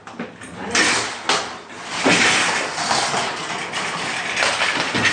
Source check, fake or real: real